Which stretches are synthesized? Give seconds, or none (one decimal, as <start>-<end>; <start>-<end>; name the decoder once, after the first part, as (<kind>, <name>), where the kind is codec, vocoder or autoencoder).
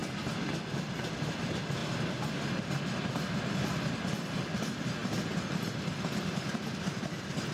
none